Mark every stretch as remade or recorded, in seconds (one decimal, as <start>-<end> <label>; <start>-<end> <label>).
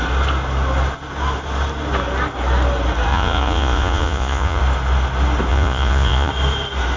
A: 0.0-3.1 recorded; 3.1-4.6 remade; 4.6-5.5 recorded; 5.5-6.3 remade; 6.3-7.0 recorded